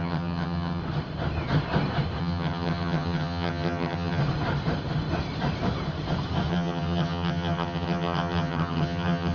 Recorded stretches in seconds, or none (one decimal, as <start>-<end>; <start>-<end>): 0.8-2.2; 4.2-6.5